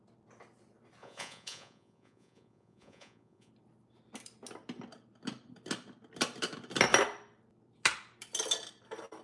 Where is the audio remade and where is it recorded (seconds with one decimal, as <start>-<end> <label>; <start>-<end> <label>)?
0.0-1.0 recorded; 1.0-3.5 remade; 3.5-9.2 recorded

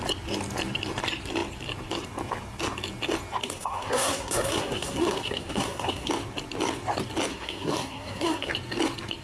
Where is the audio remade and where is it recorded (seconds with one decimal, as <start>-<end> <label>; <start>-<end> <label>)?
0.0-3.4 recorded; 3.4-6.1 remade; 6.1-7.3 recorded; 7.3-8.5 remade; 8.5-9.2 recorded

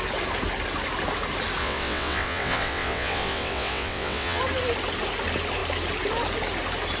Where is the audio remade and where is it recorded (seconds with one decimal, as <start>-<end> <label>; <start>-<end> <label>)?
0.0-1.6 recorded; 1.6-4.4 remade; 4.4-7.0 recorded

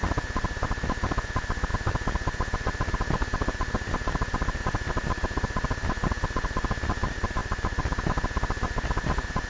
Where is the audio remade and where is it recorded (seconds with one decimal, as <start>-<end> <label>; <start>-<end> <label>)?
0.0-7.4 recorded; 7.4-8.0 remade; 8.0-9.5 recorded

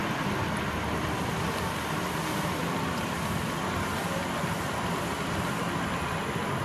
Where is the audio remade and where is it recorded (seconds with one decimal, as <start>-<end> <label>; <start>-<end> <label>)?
0.0-6.6 recorded

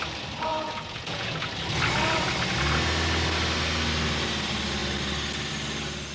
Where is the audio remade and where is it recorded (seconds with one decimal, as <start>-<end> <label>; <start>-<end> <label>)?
0.0-0.5 recorded; 0.5-1.5 remade; 1.5-6.1 recorded

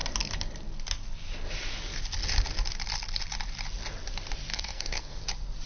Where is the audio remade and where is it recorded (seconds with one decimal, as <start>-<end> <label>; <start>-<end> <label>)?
0.0-4.5 recorded; 4.5-5.2 remade; 5.2-5.7 recorded

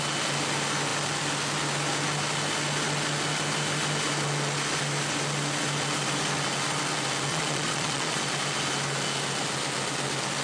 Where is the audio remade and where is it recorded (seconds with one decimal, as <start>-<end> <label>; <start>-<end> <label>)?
0.0-7.3 recorded; 7.3-8.2 remade; 8.2-10.4 recorded